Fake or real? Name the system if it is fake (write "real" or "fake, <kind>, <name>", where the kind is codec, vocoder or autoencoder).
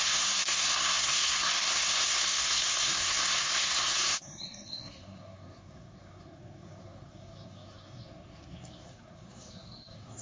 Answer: fake, codec, SNAC